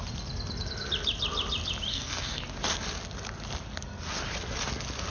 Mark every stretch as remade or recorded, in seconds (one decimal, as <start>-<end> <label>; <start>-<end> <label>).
0.0-1.9 recorded; 1.9-2.4 remade; 2.4-5.1 recorded